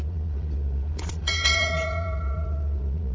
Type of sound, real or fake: fake